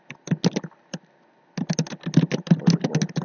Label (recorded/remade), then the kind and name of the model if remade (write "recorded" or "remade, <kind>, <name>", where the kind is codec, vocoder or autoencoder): recorded